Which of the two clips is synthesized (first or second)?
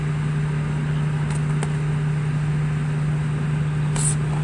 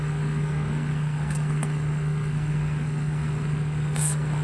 second